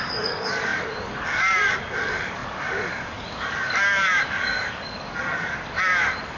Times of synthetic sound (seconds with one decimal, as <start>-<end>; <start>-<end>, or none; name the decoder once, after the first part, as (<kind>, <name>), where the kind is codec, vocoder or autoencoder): 0.0-6.4 (codec, DAC)